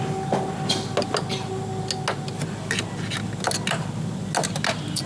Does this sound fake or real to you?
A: real